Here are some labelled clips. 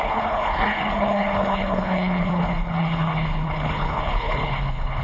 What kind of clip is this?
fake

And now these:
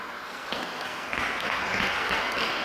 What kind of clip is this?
fake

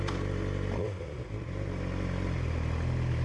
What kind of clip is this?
real